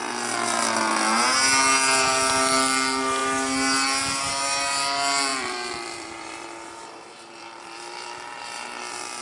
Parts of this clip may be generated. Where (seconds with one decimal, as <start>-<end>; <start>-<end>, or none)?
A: 5.3-9.2